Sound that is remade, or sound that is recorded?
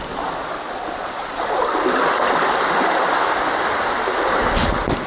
recorded